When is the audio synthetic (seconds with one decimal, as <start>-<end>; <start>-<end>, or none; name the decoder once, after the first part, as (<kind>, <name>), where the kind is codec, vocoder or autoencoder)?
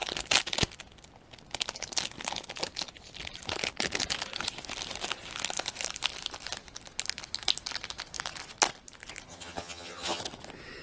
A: 9.3-10.2 (vocoder, HiFi-GAN)